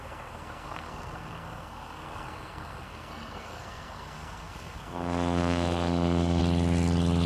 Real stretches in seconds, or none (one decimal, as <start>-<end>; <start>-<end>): 6.4-7.3